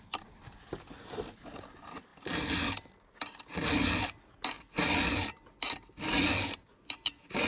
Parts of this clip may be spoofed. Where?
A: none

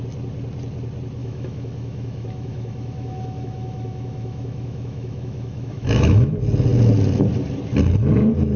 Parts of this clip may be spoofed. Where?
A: 1.2-6.3 (autoencoder, DAC-VAE)

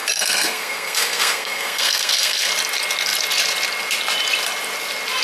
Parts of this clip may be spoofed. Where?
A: 0.0-2.5 (codec, SNAC)

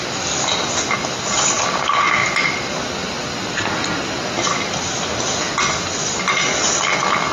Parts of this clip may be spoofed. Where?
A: none

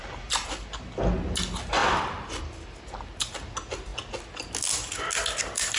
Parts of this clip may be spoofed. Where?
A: 1.8-2.4 (vocoder, BigVGAN v2)

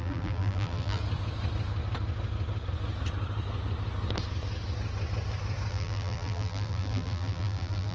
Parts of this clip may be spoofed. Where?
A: 0.0-1.0 (vocoder, BigVGAN v2); 5.7-7.9

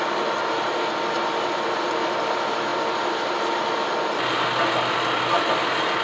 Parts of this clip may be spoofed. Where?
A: none

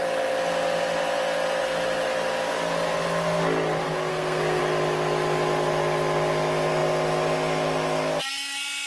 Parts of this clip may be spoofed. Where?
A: 4.1-4.6 (codec, SNAC)